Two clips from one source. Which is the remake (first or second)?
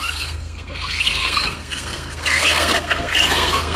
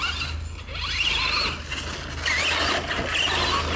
first